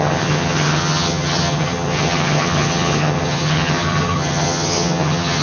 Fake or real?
fake